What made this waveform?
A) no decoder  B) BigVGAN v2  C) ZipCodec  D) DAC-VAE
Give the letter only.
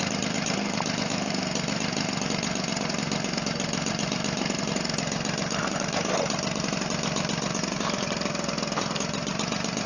B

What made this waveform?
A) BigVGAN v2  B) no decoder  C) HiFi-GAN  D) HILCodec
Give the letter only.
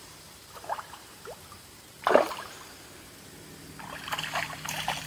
A